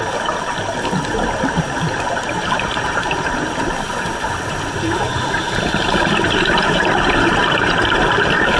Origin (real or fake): fake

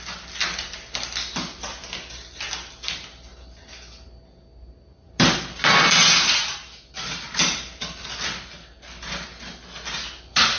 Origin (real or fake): real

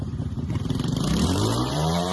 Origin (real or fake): fake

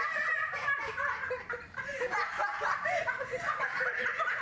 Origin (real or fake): fake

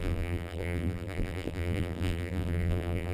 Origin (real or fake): fake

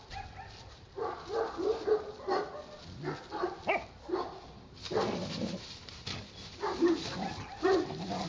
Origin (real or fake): real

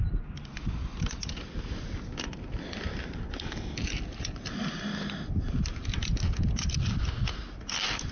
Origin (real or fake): real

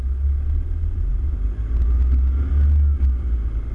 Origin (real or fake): real